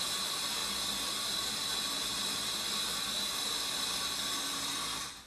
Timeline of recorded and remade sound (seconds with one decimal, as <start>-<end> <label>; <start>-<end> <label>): 0.0-5.3 recorded